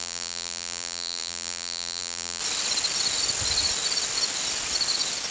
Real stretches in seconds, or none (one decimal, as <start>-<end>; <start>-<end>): 2.4-5.3